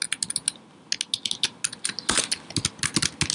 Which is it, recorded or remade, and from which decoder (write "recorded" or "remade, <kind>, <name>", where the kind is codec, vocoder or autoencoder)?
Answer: recorded